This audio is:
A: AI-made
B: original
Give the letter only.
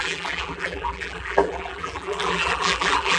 A